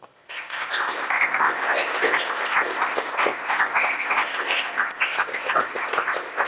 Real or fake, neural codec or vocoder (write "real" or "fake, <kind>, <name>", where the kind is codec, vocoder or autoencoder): fake, codec, ZipCodec